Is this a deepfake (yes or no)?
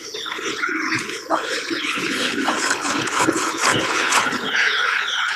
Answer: yes